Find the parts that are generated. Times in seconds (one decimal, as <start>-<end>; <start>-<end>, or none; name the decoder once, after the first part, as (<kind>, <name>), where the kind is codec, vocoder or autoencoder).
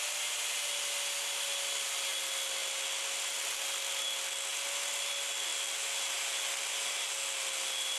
none